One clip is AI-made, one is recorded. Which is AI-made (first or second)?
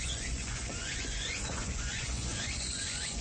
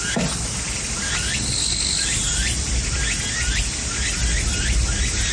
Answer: first